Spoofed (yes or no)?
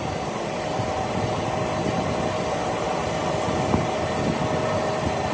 no